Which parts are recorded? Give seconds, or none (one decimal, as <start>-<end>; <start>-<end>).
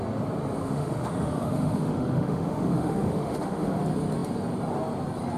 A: 0.0-0.6; 3.8-5.4